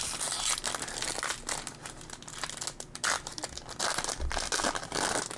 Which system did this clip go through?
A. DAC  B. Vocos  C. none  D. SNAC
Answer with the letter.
C